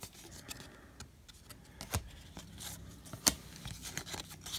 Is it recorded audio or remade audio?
recorded